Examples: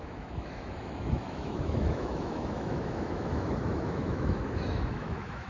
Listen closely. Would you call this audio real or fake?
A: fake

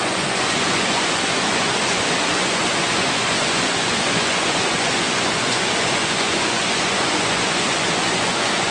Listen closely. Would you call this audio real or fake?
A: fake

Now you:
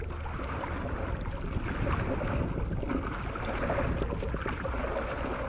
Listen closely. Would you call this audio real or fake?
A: real